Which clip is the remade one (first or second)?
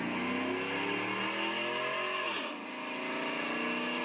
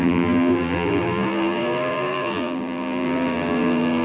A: second